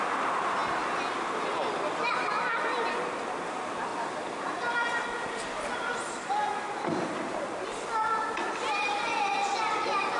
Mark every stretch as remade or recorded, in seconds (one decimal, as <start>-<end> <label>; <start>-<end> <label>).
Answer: 0.0-10.2 recorded